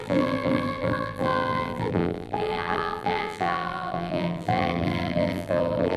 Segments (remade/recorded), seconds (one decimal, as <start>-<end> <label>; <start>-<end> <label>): 0.0-6.0 remade